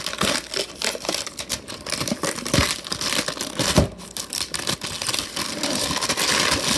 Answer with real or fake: real